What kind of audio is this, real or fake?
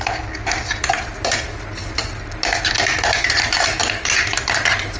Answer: real